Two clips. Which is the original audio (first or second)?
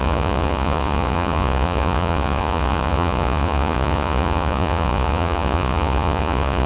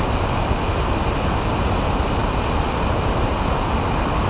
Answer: second